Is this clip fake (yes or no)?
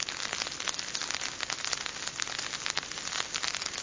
no